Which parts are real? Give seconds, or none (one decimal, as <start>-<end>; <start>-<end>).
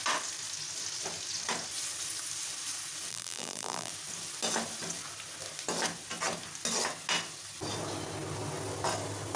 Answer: 0.0-3.1; 3.9-9.4